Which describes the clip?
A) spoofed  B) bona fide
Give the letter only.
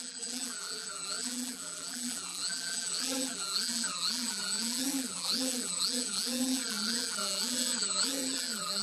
A